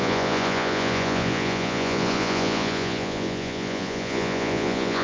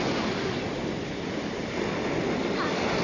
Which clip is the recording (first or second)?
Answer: second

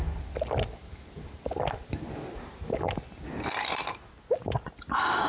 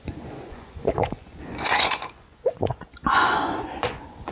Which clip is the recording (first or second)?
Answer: first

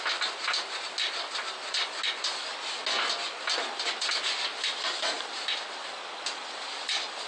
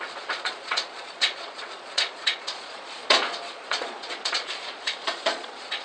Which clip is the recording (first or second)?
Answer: first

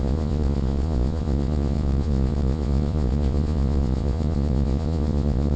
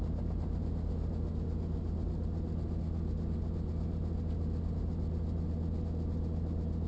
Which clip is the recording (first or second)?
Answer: second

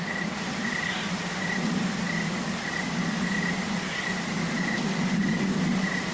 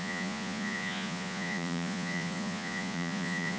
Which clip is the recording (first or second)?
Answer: first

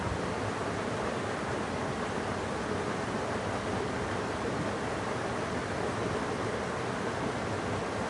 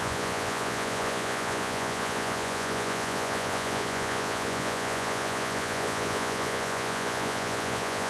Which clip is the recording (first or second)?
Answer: first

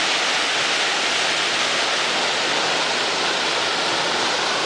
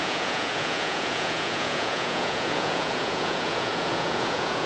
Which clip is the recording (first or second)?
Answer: first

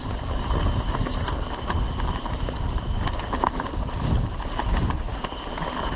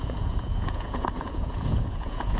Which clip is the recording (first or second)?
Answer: first